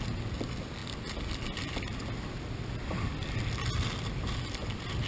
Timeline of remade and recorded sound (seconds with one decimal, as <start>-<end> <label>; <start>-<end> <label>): 0.0-5.1 recorded